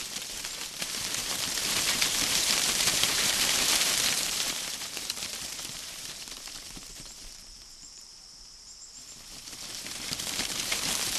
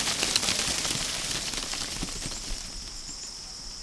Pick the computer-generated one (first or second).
first